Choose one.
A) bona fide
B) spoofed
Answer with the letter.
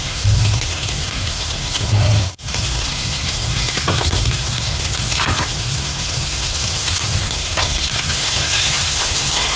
B